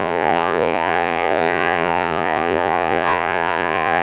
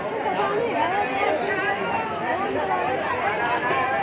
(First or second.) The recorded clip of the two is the second